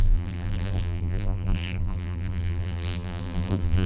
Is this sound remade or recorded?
remade